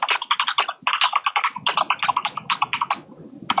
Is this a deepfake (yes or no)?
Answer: no